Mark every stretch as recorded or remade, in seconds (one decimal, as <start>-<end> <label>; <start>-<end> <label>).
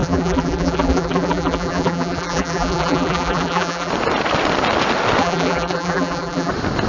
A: 0.0-3.9 remade; 3.9-5.2 recorded; 5.2-6.5 remade; 6.5-6.9 recorded